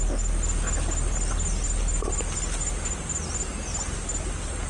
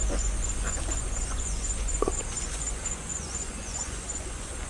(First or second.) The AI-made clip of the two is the second